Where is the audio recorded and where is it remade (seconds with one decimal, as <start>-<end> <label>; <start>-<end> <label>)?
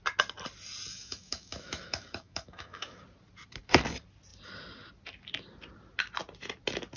0.0-0.9 recorded; 0.9-3.0 remade; 3.0-7.0 recorded